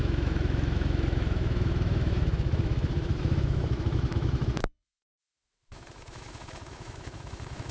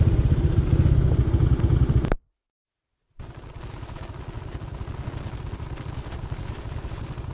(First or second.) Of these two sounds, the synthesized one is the first